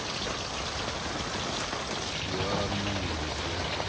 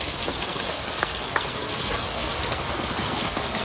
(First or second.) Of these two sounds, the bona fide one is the first